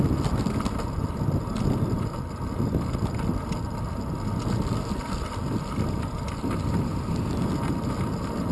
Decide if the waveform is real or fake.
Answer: real